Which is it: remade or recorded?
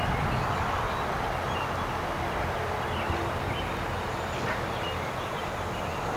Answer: recorded